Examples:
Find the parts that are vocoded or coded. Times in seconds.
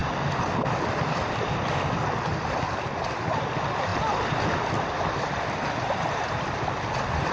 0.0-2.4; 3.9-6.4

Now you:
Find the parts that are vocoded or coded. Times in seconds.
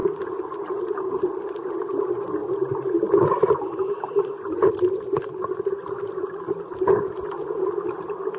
none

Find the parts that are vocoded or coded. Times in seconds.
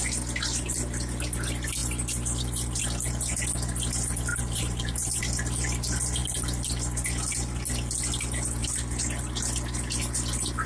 1.8-2.8; 4.3-5.2